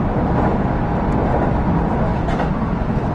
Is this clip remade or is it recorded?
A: recorded